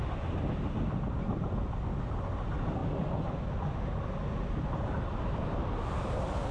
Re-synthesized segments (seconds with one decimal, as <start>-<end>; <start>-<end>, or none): none